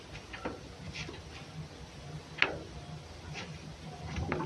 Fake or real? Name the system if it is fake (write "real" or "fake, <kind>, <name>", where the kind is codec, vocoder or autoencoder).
real